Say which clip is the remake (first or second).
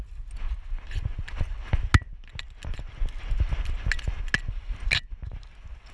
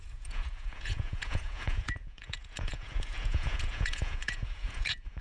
second